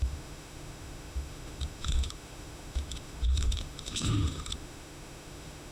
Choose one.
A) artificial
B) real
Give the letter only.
A